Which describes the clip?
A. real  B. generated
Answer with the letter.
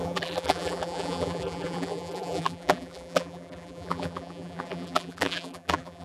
B